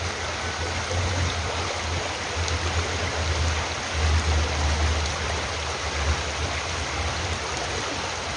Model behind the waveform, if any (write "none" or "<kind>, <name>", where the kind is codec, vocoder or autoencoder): none